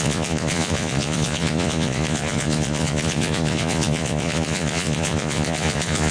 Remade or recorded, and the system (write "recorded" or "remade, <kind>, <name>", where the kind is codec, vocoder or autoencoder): remade, vocoder, Vocos